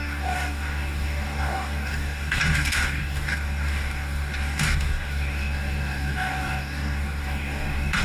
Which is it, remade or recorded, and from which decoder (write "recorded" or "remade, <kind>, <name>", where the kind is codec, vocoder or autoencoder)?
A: remade, codec, DAC